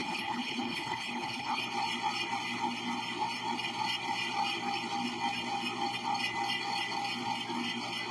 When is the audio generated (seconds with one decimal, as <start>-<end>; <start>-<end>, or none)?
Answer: 0.0-1.6